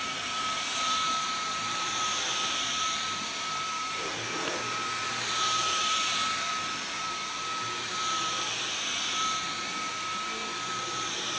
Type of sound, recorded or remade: remade